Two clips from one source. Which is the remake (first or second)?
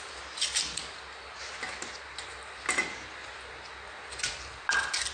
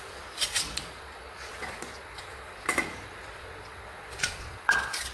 second